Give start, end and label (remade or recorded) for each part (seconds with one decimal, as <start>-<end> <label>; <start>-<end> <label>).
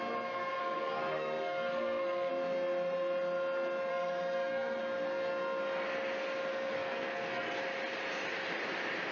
0.0-0.6 recorded; 0.6-2.3 remade; 2.3-3.9 recorded; 3.9-4.8 remade; 4.8-6.5 recorded; 6.5-7.6 remade; 7.6-9.1 recorded